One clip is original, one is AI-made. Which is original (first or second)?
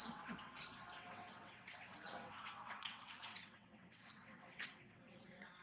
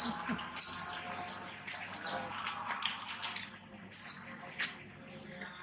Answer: second